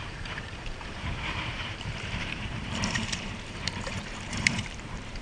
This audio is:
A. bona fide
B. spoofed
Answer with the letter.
B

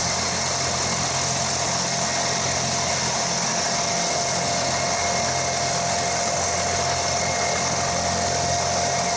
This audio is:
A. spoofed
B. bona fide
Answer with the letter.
B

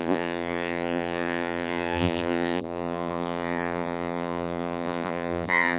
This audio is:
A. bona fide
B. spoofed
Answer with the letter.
B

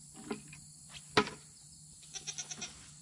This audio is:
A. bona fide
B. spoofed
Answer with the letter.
A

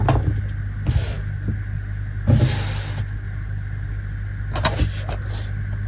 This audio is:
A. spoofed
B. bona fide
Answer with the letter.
B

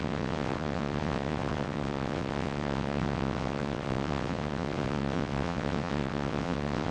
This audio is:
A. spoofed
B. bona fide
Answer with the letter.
A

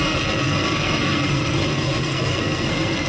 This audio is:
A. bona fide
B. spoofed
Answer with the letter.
B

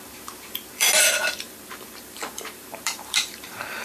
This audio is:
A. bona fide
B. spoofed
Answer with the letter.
B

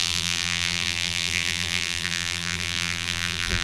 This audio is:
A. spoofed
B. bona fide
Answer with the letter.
A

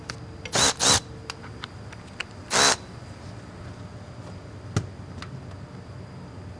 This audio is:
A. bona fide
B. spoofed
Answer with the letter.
A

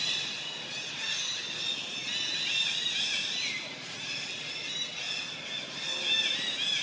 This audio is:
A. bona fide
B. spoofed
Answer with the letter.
A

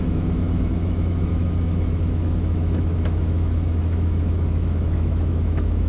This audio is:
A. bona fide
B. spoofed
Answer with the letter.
B